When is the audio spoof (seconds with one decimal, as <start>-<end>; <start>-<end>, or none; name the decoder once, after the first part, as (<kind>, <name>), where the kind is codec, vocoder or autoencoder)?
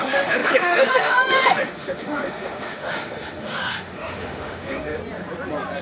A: 0.0-5.0 (autoencoder, DAC-VAE)